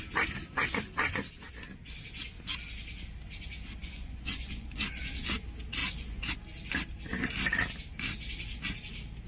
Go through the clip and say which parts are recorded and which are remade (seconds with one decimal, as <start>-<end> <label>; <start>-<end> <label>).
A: 0.0-3.8 recorded; 3.8-5.0 remade; 5.0-5.8 recorded; 5.8-6.3 remade; 6.3-9.3 recorded